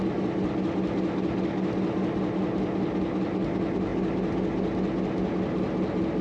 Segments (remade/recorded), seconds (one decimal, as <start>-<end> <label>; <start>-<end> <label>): 0.0-6.2 recorded